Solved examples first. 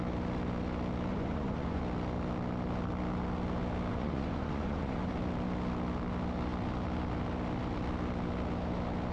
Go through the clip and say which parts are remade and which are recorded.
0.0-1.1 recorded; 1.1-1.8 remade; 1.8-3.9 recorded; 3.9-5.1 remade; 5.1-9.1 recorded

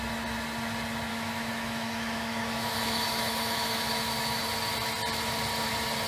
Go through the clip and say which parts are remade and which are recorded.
0.0-1.1 recorded; 1.1-4.4 remade; 4.4-6.1 recorded

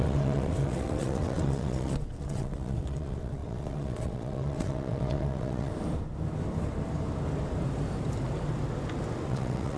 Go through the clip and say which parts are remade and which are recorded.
0.0-5.7 remade; 5.7-9.3 recorded; 9.3-9.8 remade

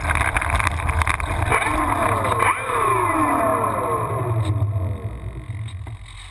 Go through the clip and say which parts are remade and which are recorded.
0.0-6.3 recorded